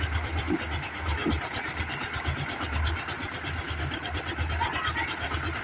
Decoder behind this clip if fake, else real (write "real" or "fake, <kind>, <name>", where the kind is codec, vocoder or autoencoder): real